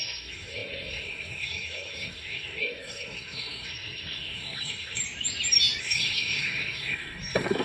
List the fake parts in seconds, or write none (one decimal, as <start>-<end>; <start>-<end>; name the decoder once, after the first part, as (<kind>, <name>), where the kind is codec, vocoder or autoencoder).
0.0-5.0 (codec, SNAC); 5.8-7.6